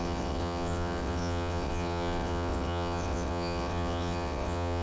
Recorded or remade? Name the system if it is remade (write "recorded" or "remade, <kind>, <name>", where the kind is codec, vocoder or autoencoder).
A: remade, vocoder, WaveNeXt